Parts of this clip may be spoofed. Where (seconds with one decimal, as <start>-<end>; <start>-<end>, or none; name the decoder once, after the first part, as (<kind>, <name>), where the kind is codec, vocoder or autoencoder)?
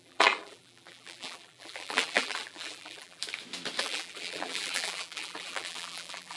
0.0-3.2 (vocoder, BigVGAN v2); 3.8-6.4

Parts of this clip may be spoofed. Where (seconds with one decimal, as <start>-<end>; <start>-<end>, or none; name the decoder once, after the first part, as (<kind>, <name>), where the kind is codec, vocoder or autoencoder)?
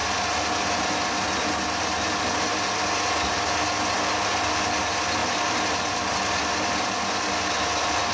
5.2-6.9 (vocoder, BigVGAN v2)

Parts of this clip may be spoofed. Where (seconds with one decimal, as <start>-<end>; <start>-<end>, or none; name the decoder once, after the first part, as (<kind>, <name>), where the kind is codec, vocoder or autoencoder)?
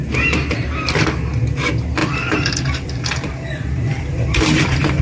2.0-5.0 (vocoder, BigVGAN v2)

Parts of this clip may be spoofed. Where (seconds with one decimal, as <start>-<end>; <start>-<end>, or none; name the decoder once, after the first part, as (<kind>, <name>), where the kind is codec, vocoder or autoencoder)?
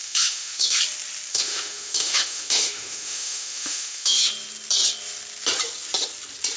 0.0-0.8 (autoencoder, DAC-VAE); 1.3-4.3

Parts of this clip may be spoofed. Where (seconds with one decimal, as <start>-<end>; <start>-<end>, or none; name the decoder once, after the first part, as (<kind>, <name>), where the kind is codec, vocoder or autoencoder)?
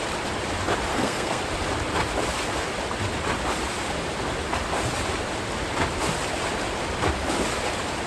0.9-1.4 (codec, SNAC)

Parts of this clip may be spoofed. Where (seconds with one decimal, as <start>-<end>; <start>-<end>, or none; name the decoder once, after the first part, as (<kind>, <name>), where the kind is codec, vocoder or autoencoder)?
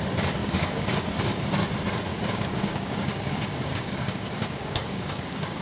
0.4-1.1 (codec, DAC); 2.1-5.6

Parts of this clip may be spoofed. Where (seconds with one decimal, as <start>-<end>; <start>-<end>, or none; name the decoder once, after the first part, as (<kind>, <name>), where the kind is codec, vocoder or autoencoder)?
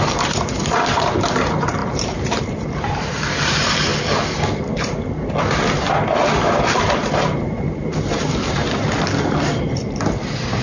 0.0-3.9 (vocoder, BigVGAN v2); 5.9-10.6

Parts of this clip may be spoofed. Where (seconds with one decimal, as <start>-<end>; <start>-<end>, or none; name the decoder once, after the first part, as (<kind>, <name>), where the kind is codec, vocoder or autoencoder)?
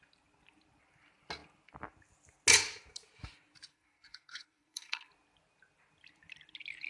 3.7-5.1 (codec, SNAC)